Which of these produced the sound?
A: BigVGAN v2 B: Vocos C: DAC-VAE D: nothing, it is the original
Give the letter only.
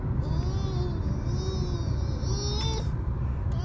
D